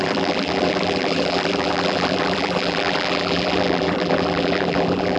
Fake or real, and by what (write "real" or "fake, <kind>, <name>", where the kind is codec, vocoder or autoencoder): fake, vocoder, BigVGAN v2